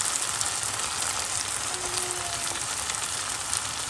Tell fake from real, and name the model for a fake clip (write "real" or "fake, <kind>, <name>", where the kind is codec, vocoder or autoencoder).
real